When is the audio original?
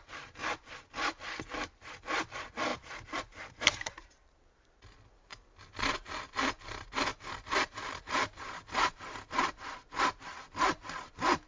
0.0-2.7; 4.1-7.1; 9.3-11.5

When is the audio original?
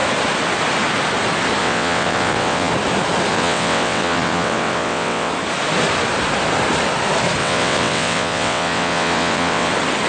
0.0-1.6; 2.7-3.3; 5.3-7.4; 9.7-10.1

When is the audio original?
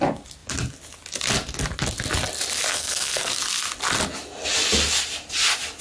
0.0-2.7; 3.3-5.8